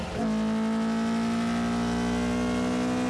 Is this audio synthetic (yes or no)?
no